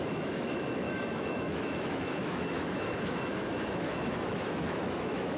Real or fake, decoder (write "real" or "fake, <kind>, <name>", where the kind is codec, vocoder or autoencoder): fake, autoencoder, DAC-VAE